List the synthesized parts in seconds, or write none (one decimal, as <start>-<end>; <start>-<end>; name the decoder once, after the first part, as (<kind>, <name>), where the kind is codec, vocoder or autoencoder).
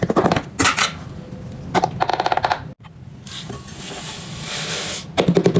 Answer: none